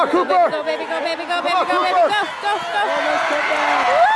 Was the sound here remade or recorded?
recorded